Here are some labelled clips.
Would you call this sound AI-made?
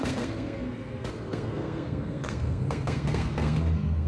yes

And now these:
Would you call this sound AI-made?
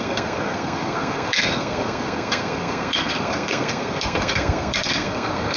yes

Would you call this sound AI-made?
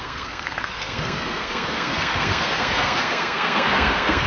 yes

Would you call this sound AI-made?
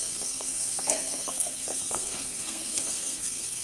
yes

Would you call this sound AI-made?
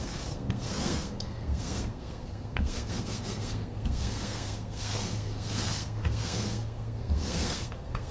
yes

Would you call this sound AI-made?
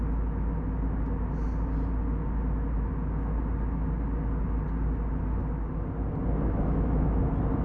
no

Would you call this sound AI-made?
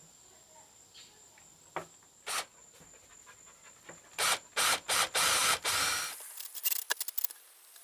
no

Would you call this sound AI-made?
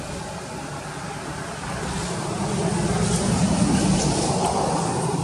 no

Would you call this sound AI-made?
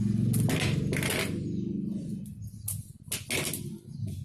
no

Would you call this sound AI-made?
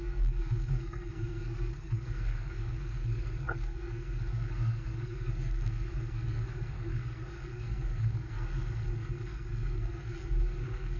yes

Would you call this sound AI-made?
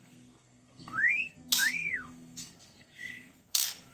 yes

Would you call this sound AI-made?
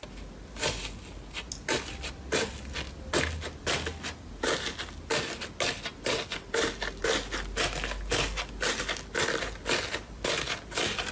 no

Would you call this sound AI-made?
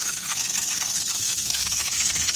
yes